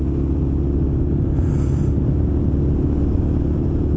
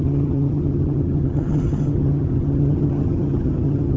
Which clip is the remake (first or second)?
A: second